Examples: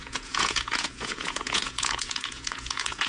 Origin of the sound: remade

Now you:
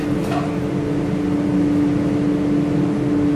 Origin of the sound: recorded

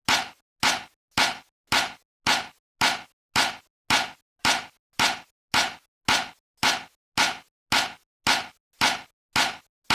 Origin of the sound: recorded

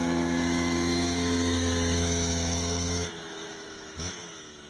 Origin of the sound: remade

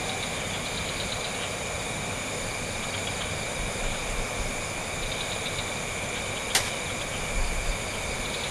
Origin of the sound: recorded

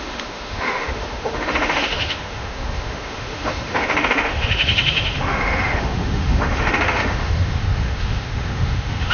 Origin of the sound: remade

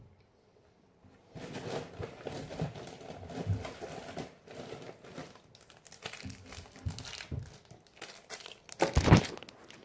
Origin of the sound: recorded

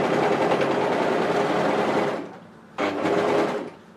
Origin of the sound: recorded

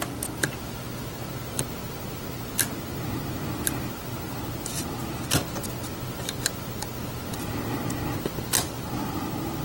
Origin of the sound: recorded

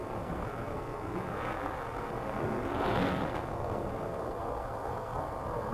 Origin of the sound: remade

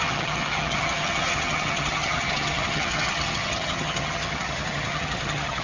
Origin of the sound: remade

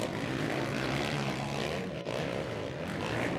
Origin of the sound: recorded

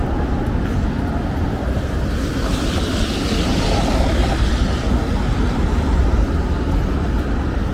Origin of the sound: recorded